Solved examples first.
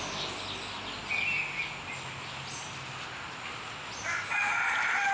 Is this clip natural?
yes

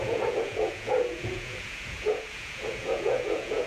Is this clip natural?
no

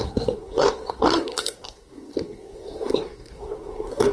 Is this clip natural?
no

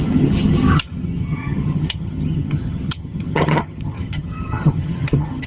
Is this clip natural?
no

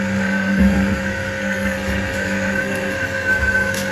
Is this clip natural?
no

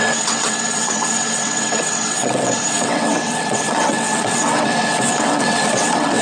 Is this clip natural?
no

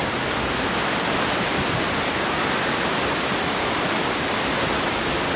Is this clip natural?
yes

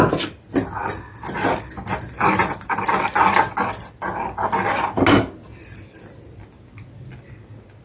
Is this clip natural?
yes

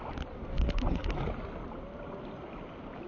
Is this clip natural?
yes